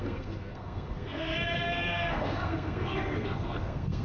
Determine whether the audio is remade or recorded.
remade